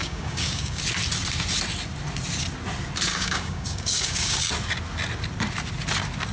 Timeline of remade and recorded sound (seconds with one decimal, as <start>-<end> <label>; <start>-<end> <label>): 0.0-0.8 remade; 0.8-3.1 recorded; 3.1-4.5 remade; 4.5-6.3 recorded